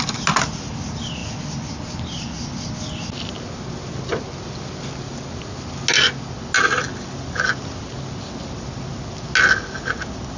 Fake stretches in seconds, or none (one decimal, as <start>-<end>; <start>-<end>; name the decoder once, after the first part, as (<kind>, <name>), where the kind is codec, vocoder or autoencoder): none